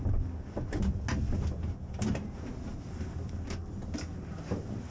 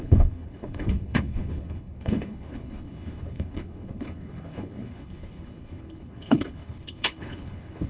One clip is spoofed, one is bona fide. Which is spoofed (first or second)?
second